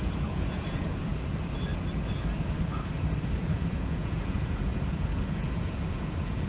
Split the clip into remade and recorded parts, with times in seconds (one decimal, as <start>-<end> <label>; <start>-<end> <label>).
0.0-1.1 remade; 1.1-3.4 recorded; 3.4-6.5 remade